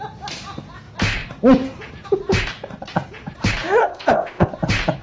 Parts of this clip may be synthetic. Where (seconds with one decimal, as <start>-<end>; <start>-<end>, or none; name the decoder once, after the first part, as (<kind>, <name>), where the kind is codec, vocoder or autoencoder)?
3.8-4.5 (codec, ZipCodec)